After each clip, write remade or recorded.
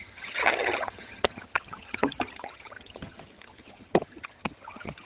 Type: remade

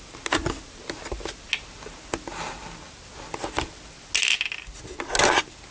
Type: recorded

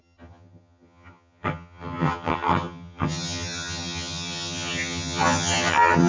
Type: remade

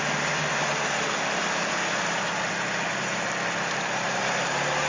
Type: recorded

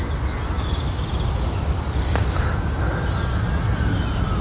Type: recorded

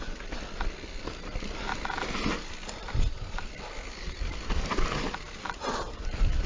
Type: recorded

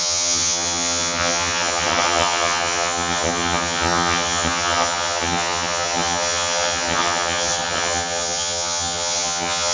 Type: remade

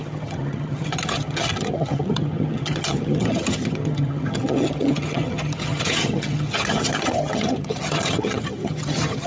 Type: remade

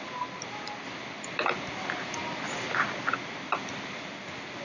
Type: recorded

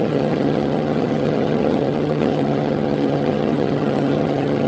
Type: remade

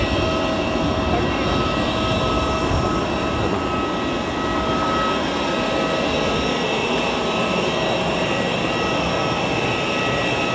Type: recorded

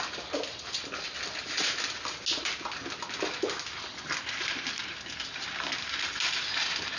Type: recorded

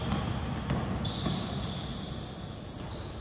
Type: recorded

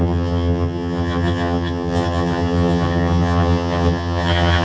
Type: remade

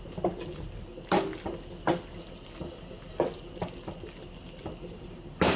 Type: recorded